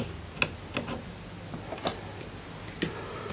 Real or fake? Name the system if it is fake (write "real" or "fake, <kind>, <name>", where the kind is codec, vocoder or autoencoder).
real